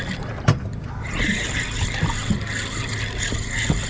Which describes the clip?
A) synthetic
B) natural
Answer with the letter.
B